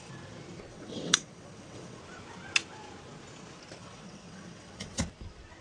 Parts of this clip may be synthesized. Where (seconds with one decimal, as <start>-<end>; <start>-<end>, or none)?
0.7-2.0; 3.8-5.0